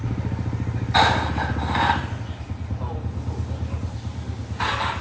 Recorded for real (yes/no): yes